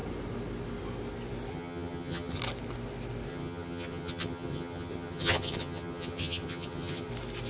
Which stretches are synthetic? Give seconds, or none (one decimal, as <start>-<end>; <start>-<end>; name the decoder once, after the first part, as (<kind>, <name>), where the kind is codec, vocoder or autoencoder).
1.5-2.4 (vocoder, HiFi-GAN); 3.3-7.1